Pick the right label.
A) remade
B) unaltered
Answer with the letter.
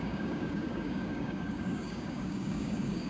A